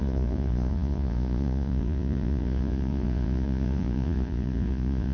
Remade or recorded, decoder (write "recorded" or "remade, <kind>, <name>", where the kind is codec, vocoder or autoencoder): remade, vocoder, Vocos